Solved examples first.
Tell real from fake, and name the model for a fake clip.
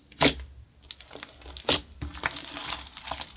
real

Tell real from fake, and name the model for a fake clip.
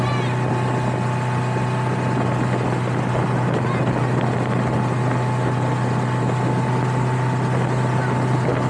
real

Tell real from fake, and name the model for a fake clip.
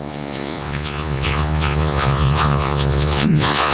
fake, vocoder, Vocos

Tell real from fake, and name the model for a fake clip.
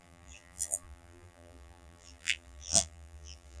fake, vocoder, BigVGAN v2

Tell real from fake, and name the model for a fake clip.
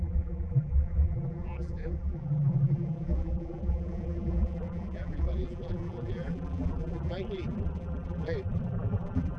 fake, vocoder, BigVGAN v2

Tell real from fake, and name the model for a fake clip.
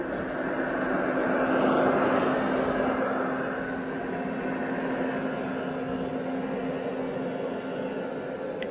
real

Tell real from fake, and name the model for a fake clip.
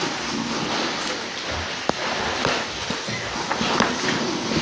real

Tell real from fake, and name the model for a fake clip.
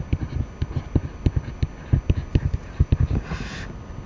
real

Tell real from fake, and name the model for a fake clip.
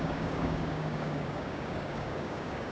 fake, codec, DAC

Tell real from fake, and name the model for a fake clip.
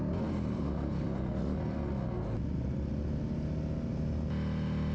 real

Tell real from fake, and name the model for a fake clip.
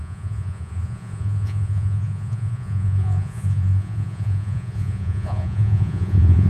fake, vocoder, Vocos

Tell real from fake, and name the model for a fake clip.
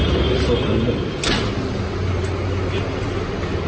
real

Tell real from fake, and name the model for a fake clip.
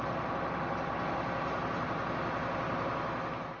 real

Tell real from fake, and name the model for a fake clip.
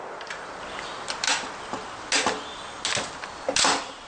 real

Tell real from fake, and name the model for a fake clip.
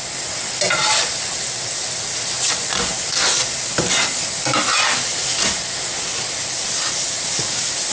real